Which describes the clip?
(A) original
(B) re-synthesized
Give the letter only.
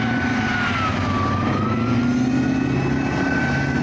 A